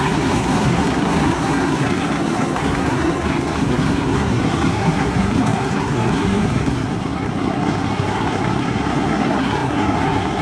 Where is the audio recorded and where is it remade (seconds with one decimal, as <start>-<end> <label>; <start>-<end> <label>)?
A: 0.0-10.4 remade